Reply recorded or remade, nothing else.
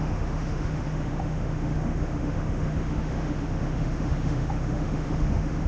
remade